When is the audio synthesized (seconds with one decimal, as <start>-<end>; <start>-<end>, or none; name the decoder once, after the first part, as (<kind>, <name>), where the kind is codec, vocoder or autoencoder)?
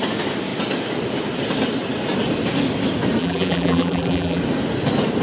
3.2-4.4 (vocoder, BigVGAN v2)